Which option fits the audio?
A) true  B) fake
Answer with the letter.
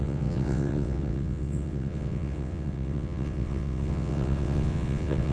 B